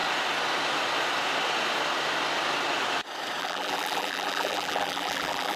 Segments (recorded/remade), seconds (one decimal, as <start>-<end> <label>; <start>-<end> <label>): 0.0-3.4 recorded; 3.4-5.6 remade